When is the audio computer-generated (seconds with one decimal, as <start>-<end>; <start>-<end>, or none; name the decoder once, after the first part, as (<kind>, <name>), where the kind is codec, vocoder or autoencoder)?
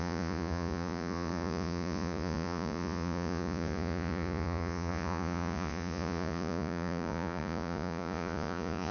0.0-8.9 (vocoder, Vocos)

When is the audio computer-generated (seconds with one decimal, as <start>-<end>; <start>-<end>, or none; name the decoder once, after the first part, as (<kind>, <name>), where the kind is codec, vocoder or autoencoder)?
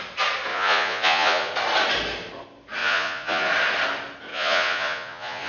0.5-1.5 (vocoder, Vocos); 2.8-3.5; 4.3-5.5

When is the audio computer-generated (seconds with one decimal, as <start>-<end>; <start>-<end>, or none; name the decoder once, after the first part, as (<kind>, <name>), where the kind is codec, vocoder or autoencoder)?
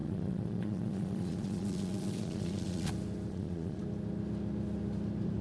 0.0-2.9 (vocoder, Vocos); 3.3-3.8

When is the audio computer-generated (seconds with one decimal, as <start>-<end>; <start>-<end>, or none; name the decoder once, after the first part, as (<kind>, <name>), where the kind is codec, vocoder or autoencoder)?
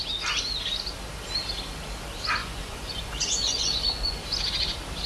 2.4-4.2 (vocoder, Vocos)